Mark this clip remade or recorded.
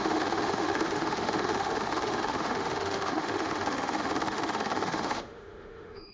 remade